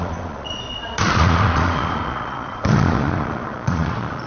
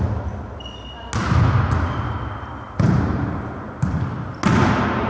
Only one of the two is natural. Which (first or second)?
second